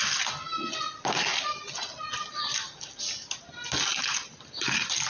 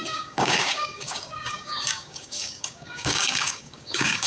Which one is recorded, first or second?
first